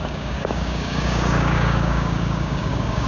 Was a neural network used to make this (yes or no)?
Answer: yes